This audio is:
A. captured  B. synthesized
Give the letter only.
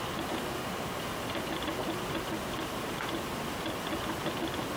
A